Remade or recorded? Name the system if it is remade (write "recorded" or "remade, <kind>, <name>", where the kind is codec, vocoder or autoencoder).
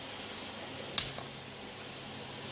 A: recorded